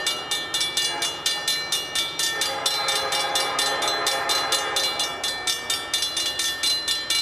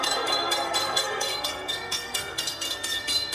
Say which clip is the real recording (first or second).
first